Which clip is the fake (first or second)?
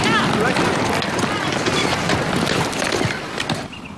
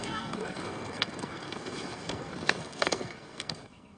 second